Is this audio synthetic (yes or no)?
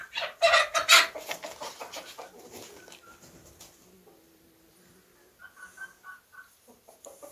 no